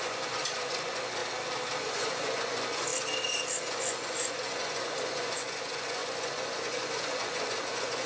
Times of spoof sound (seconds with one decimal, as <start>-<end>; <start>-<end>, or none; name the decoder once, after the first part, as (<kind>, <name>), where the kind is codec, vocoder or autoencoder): 0.0-1.2 (vocoder, Vocos); 1.8-2.9; 3.6-8.1